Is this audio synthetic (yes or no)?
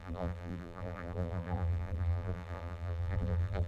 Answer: yes